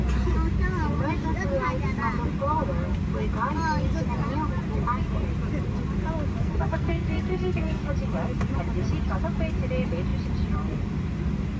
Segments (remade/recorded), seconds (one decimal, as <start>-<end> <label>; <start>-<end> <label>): 0.0-6.4 recorded; 6.4-7.8 remade; 7.8-11.6 recorded